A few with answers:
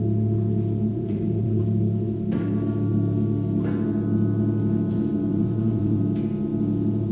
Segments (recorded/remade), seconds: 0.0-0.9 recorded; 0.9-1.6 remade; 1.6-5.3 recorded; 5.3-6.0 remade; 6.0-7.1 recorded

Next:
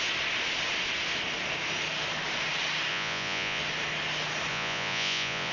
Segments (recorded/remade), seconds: 0.0-2.9 recorded; 2.9-3.6 remade; 3.6-4.5 recorded; 4.5-5.5 remade

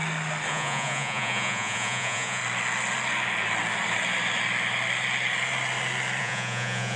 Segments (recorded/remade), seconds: 0.0-0.5 recorded; 0.5-2.4 remade; 2.4-6.2 recorded; 6.2-7.0 remade

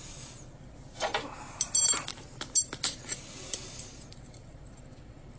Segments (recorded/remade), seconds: 0.0-5.4 recorded

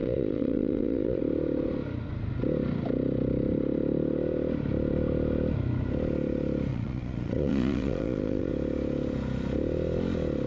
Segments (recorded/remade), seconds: 0.0-1.2 remade; 1.2-6.7 recorded; 6.7-8.5 remade; 8.5-10.5 recorded